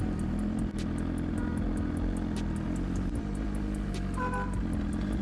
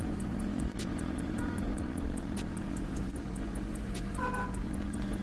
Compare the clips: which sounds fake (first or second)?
second